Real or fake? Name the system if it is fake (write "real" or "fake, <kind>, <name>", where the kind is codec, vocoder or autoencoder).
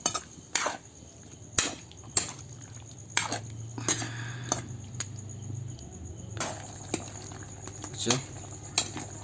real